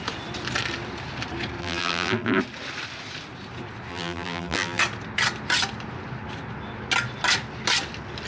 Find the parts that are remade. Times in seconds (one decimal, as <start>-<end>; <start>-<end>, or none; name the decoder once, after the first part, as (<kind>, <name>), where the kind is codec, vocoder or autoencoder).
1.6-2.4 (vocoder, BigVGAN v2); 3.9-4.8